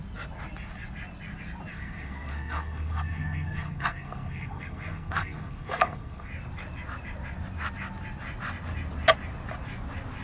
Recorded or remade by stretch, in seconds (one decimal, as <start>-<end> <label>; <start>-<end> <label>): 0.0-1.7 recorded; 1.7-6.3 remade; 6.3-10.2 recorded